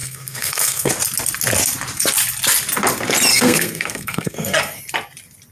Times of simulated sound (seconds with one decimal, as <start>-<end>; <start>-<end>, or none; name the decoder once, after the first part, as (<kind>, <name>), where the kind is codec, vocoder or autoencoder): 0.0-0.9 (codec, SNAC); 3.3-4.8